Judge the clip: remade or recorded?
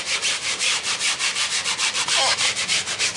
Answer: remade